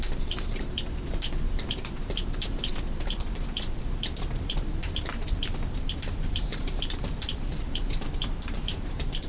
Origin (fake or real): fake